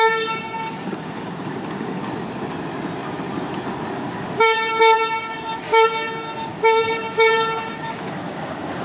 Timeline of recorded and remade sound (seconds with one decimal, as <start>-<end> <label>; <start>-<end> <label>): 0.0-2.0 remade; 2.0-3.9 recorded; 3.9-8.8 remade